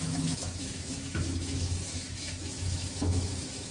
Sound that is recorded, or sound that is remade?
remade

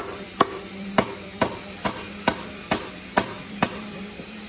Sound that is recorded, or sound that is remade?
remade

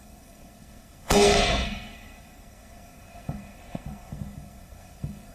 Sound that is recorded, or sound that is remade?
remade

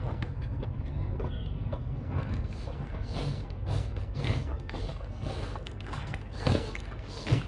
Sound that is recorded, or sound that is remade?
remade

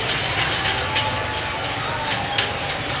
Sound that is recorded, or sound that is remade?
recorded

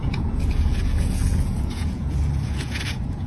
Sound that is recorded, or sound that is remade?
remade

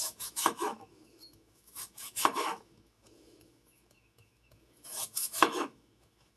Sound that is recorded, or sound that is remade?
remade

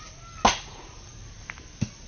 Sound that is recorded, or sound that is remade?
recorded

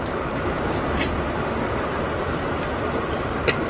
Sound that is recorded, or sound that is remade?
recorded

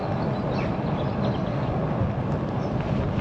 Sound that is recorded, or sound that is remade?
recorded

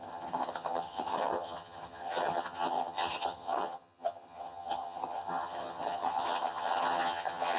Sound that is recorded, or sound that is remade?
remade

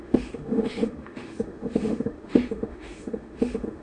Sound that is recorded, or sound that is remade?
remade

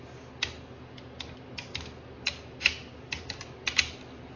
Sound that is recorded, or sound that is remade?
recorded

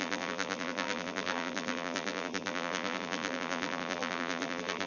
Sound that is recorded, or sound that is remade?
remade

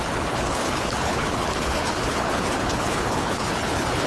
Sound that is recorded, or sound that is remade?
remade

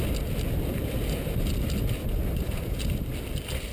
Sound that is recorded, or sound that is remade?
recorded